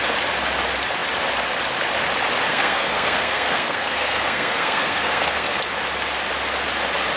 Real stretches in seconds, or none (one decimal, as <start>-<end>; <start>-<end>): 0.0-2.5; 5.6-7.2